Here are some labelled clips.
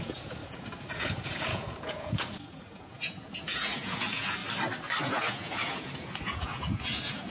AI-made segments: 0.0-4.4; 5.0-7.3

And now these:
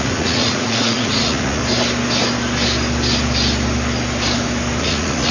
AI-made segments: 0.0-1.6; 4.8-5.3

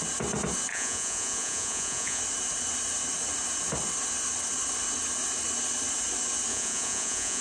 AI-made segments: 0.7-2.2; 6.5-7.4

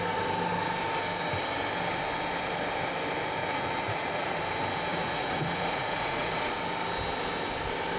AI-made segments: 3.4-4.4; 4.9-6.5

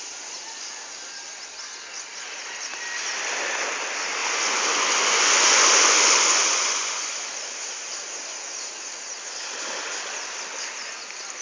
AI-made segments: 4.2-7.3

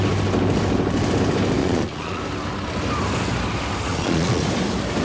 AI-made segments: 1.6-2.2; 3.9-4.4

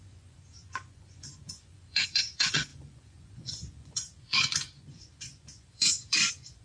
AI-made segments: 0.0-6.6